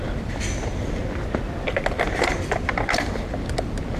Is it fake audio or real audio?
real